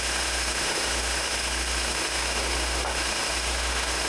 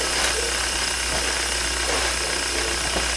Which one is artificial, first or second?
first